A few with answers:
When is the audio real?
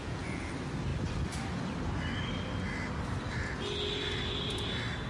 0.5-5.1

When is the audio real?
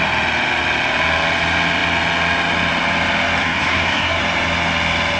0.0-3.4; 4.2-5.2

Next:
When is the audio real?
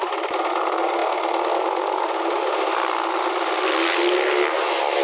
0.0-5.0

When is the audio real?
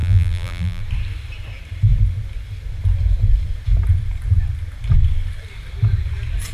0.8-6.5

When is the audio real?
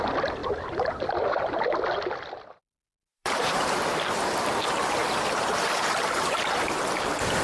0.0-0.4; 1.0-3.2; 4.0-5.0; 6.6-7.4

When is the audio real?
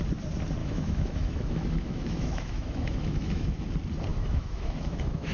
0.0-0.6; 3.6-4.1